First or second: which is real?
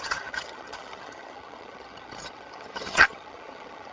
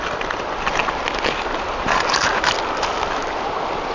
second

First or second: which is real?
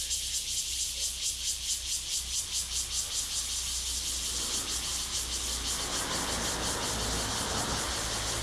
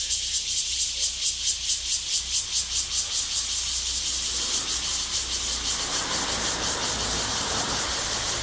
first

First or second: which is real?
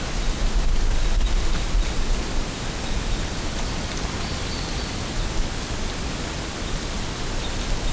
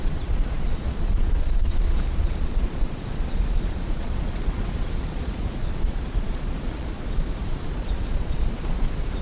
first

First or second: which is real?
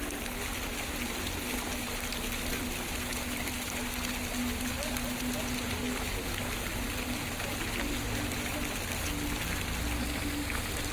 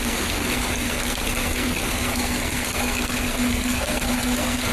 first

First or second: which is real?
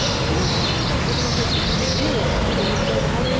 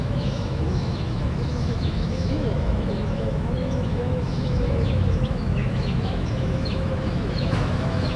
first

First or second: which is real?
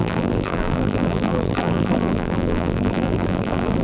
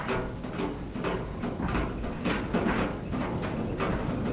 second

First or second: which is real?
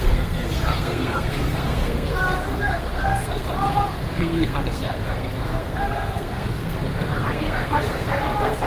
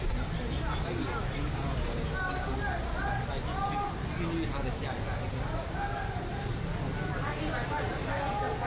second